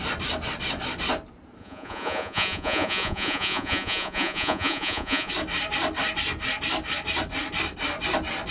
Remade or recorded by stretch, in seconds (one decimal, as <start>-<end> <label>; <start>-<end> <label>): 0.0-1.6 recorded; 1.6-5.3 remade; 5.3-8.5 recorded